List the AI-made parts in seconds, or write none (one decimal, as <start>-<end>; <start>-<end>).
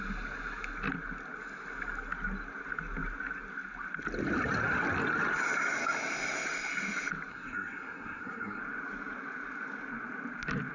7.3-8.6